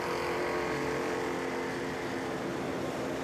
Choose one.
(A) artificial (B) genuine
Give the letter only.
B